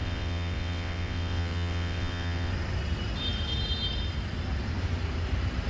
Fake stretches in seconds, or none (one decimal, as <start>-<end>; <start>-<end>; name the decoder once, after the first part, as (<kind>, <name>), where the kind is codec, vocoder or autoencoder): 0.0-2.5 (vocoder, WaveNeXt)